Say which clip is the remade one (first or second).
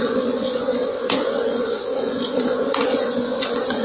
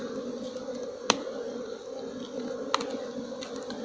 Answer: first